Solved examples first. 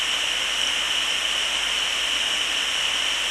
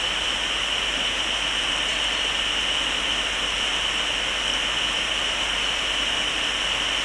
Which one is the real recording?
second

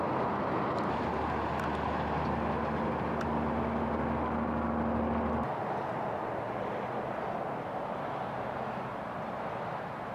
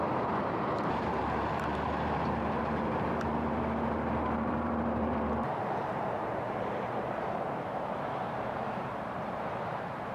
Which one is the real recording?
first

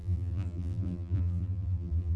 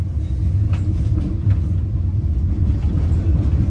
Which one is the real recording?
second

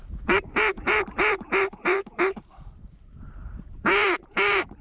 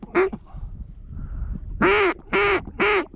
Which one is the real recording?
second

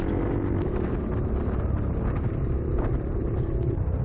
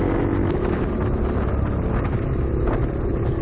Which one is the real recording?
second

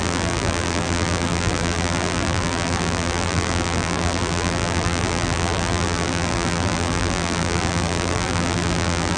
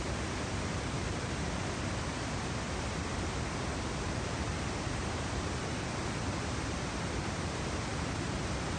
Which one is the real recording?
second